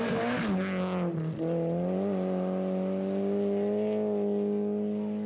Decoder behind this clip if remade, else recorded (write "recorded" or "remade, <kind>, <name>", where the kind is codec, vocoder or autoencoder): recorded